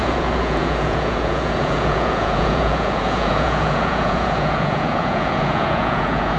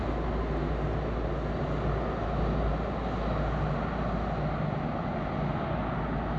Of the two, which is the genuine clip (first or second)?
second